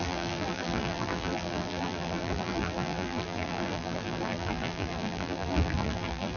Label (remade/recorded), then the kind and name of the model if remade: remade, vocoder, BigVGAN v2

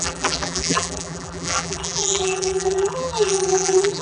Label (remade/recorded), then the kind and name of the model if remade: remade, vocoder, BigVGAN v2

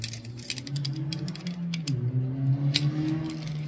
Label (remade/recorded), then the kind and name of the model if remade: recorded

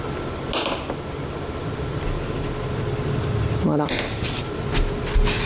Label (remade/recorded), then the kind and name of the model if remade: recorded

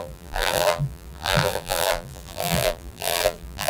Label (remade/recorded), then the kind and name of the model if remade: remade, vocoder, BigVGAN v2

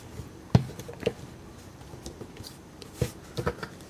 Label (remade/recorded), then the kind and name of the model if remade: remade, vocoder, BigVGAN v2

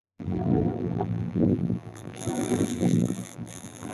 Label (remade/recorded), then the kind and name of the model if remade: remade, vocoder, BigVGAN v2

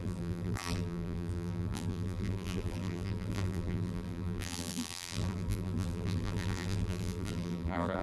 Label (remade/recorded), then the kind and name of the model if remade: remade, vocoder, BigVGAN v2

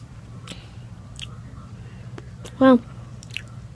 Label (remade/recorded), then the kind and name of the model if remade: remade, vocoder, BigVGAN v2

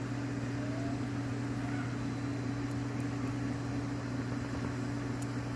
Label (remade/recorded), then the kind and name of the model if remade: remade, vocoder, BigVGAN v2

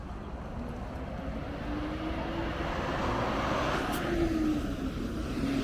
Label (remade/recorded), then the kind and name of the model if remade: recorded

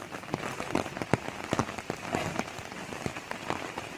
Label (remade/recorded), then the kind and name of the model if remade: recorded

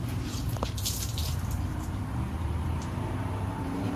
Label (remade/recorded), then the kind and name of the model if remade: remade, vocoder, BigVGAN v2